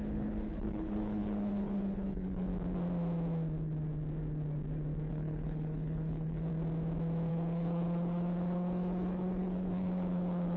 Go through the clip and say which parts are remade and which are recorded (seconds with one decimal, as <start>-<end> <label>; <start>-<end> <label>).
0.0-2.5 remade; 2.5-5.1 recorded; 5.1-6.5 remade; 6.5-7.3 recorded; 7.3-10.6 remade